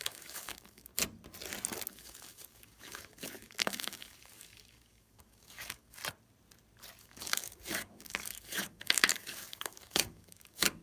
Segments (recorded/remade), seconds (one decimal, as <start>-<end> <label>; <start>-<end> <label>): 0.0-0.9 remade; 0.9-1.9 recorded; 1.9-6.0 remade; 6.0-7.0 recorded; 7.0-10.8 remade